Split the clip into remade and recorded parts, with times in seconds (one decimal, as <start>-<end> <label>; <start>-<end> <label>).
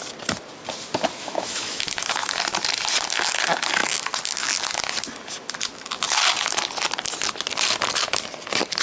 0.0-1.2 recorded; 1.2-1.8 remade; 1.8-8.8 recorded